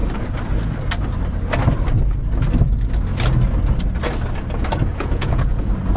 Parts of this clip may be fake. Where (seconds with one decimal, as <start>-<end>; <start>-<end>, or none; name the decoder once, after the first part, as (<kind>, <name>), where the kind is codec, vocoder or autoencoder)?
4.9-5.6 (vocoder, Vocos)

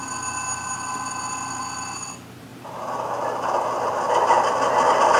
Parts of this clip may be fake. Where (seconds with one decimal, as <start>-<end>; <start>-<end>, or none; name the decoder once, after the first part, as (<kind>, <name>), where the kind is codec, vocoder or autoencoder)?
none

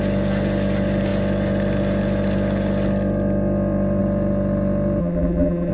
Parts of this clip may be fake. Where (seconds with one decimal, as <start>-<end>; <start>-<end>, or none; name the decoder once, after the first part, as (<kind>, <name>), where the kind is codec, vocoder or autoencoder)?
5.0-5.7 (vocoder, BigVGAN v2)